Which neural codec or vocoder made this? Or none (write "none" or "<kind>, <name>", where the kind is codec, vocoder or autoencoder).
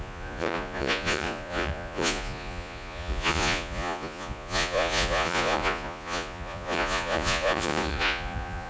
vocoder, Vocos